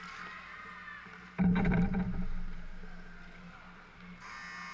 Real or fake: real